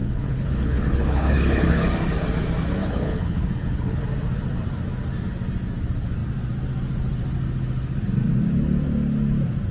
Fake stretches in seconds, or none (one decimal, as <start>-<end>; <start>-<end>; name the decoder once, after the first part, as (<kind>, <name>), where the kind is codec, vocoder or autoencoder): 0.0-1.9 (codec, HILCodec); 2.8-4.0